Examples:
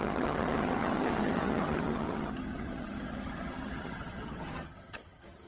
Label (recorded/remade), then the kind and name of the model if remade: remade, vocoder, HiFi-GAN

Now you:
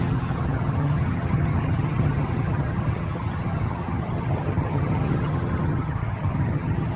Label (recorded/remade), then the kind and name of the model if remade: remade, vocoder, HiFi-GAN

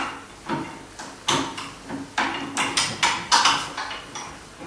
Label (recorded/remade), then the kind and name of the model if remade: recorded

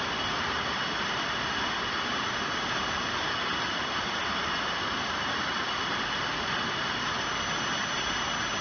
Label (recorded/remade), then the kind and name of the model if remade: recorded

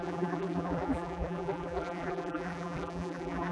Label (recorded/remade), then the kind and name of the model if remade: remade, vocoder, BigVGAN v2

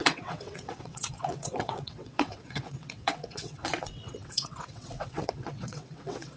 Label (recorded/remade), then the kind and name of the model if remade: remade, vocoder, WaveNeXt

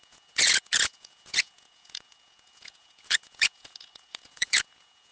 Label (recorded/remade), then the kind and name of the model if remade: remade, vocoder, Vocos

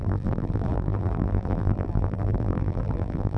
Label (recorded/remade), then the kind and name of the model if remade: remade, vocoder, BigVGAN v2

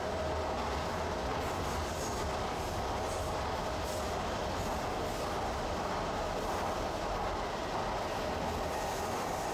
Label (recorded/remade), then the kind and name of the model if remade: recorded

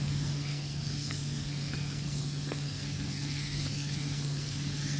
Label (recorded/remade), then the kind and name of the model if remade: remade, codec, SNAC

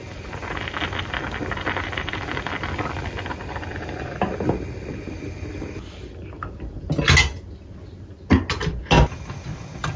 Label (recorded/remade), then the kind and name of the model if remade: recorded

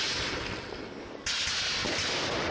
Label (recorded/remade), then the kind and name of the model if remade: recorded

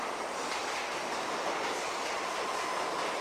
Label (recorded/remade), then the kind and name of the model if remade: remade, vocoder, BigVGAN v2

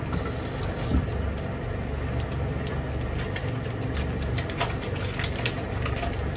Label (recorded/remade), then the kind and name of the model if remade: recorded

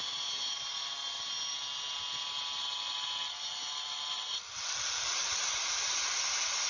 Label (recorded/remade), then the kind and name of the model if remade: recorded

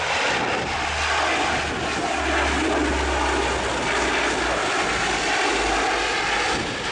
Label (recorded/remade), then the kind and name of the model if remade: recorded